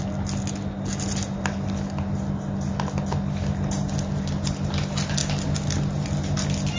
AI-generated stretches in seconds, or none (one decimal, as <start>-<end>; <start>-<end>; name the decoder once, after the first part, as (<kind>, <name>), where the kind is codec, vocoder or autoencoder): none